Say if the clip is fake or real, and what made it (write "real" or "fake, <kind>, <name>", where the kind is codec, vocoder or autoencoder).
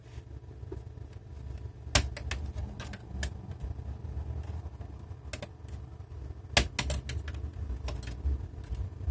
real